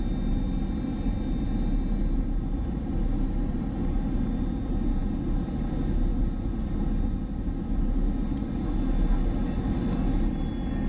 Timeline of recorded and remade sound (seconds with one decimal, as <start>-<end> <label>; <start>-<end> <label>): 0.0-10.9 recorded